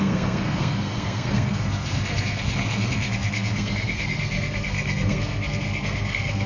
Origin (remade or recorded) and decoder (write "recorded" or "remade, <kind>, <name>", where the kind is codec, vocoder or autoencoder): remade, codec, SNAC